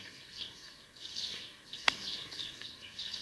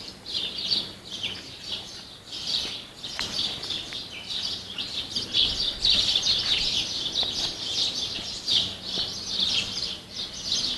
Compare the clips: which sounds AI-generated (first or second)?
first